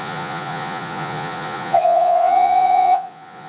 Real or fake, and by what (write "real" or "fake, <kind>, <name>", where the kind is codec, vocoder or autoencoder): fake, vocoder, Vocos